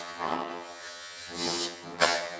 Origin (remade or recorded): remade